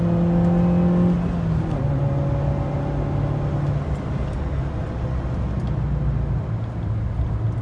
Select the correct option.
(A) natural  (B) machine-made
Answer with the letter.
A